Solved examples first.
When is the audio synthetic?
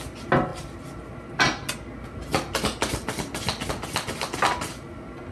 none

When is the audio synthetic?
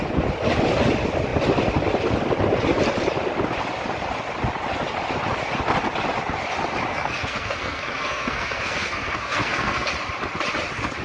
6.9-9.9 (codec, SNAC)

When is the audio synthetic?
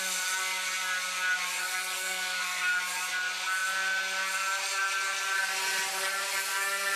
1.6-2.8 (codec, SNAC); 6.5-7.0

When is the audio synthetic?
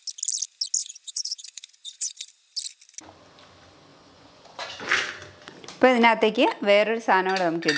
0.8-2.3 (vocoder, Vocos); 3.9-4.8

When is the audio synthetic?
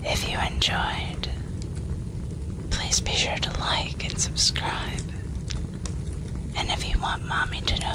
none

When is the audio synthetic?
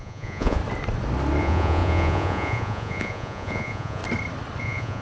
0.0-0.6 (vocoder, Vocos); 1.4-4.0; 4.6-5.0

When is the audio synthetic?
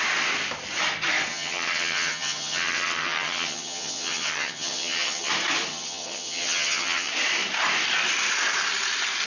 1.3-5.3 (vocoder, HiFi-GAN); 5.7-7.1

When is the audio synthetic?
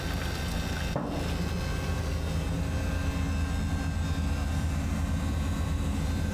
none